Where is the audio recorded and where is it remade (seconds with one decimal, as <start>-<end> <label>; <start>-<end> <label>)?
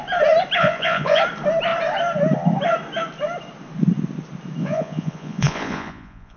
0.0-0.6 recorded; 0.6-1.2 remade; 1.2-4.6 recorded; 4.6-6.4 remade